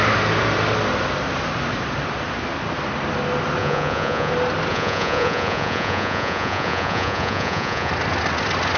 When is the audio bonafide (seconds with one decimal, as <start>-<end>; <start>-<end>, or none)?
0.0-3.6; 4.3-4.7; 7.9-8.8